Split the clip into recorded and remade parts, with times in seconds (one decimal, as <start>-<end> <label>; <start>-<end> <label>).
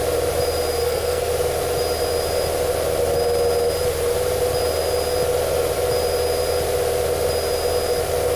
0.0-0.8 recorded; 0.8-1.3 remade; 1.3-8.4 recorded